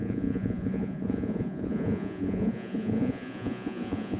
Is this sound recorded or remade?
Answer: remade